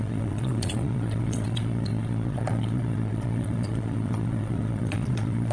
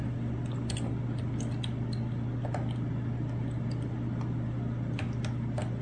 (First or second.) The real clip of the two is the second